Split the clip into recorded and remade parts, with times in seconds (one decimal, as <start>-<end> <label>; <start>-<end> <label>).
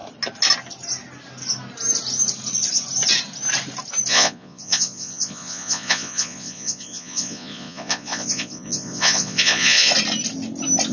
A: 0.0-4.1 recorded; 4.1-9.9 remade; 9.9-10.9 recorded